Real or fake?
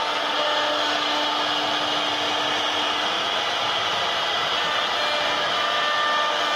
real